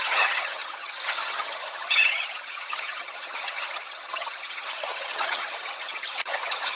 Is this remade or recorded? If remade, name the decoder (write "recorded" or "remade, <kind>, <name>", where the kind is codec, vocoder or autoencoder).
remade, vocoder, HiFi-GAN